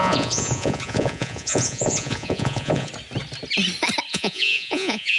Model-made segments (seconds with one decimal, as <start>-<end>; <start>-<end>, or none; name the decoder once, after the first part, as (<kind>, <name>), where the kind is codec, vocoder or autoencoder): 0.0-2.9 (vocoder, Vocos); 4.1-5.2